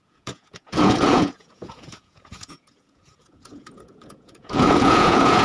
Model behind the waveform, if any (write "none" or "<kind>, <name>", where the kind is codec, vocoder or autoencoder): vocoder, Vocos